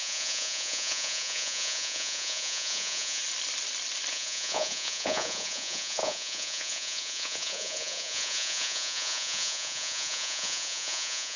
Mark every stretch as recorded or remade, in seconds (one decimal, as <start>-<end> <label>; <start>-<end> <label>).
0.0-3.2 remade; 3.2-4.1 recorded; 4.1-11.4 remade

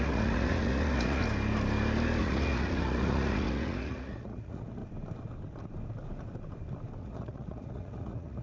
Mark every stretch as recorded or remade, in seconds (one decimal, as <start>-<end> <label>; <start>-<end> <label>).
0.0-1.2 remade; 1.2-2.2 recorded; 2.2-4.8 remade; 4.8-7.0 recorded; 7.0-8.4 remade

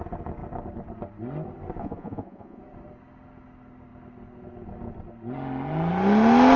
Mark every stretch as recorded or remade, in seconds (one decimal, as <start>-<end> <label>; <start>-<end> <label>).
0.0-1.8 recorded; 1.8-2.6 remade; 2.6-6.6 recorded

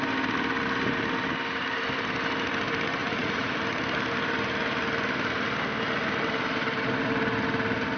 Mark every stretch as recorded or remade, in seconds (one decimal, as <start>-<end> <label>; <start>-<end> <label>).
0.0-3.0 recorded; 3.0-3.6 remade; 3.6-8.0 recorded

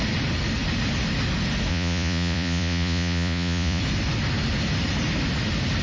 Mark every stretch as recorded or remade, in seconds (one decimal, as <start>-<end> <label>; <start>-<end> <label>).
0.0-1.7 recorded; 1.7-3.8 remade; 3.8-5.8 recorded